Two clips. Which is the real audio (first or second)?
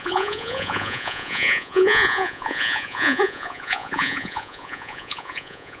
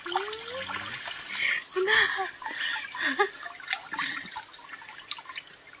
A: second